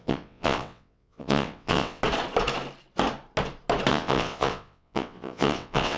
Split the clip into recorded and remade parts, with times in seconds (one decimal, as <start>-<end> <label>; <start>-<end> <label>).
0.0-2.0 remade; 2.0-3.9 recorded; 3.9-6.0 remade